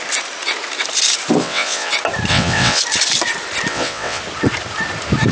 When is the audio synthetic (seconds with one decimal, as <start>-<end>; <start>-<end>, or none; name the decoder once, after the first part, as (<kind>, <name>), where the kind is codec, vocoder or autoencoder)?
1.4-1.9 (vocoder, WaveNeXt); 2.3-2.8; 3.7-4.2